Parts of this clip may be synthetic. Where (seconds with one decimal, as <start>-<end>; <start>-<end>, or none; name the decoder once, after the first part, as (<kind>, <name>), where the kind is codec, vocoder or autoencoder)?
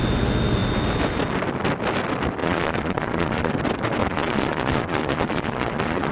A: 2.4-3.5 (vocoder, Vocos); 4.0-6.1